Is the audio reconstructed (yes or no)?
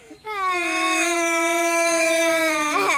yes